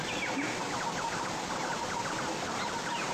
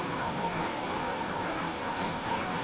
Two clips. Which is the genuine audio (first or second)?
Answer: first